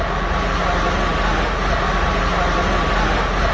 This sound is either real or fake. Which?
real